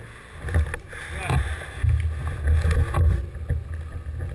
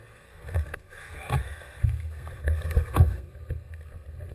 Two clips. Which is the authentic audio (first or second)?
first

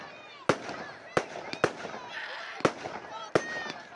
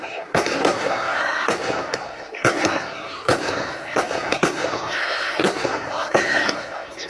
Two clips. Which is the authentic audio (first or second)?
first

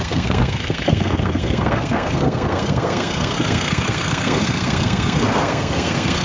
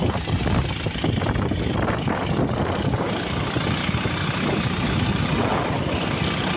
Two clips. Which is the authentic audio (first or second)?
second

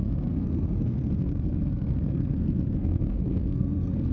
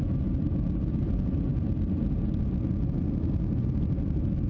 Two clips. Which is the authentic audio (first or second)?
second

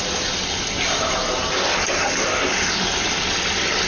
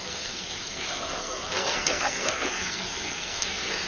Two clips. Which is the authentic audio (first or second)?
first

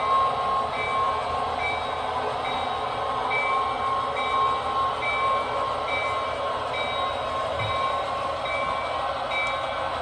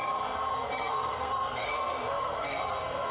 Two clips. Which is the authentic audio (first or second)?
first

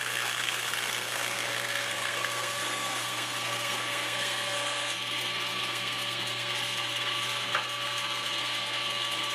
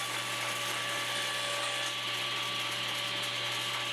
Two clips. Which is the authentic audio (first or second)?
second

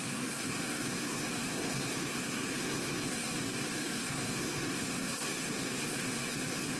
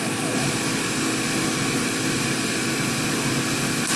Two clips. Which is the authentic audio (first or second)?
second